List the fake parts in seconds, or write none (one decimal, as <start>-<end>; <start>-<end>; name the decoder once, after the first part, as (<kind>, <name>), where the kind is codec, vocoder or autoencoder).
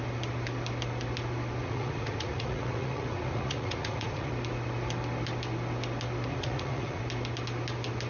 1.6-4.3 (vocoder, Vocos); 6.3-7.0